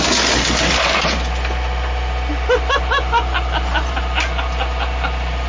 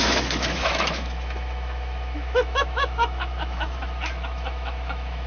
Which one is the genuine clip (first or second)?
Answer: first